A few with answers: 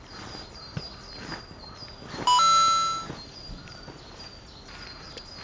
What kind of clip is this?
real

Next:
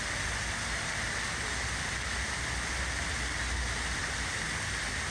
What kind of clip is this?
real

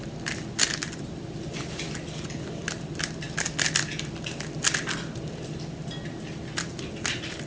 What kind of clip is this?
real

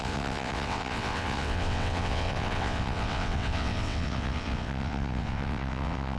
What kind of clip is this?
fake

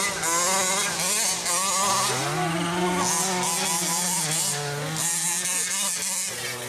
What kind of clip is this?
real